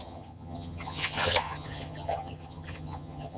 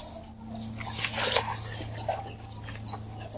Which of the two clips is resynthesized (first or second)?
first